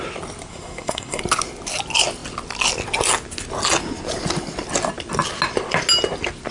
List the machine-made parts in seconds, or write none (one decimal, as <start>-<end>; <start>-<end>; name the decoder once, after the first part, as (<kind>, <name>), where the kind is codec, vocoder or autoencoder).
0.5-1.2 (codec, SNAC)